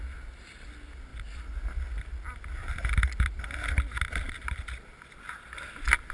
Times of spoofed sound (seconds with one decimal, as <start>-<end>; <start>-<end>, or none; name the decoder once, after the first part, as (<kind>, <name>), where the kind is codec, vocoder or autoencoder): none